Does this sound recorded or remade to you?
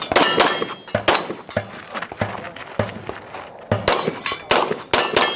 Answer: recorded